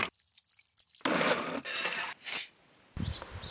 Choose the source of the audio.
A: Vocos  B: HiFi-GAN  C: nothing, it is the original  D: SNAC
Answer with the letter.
C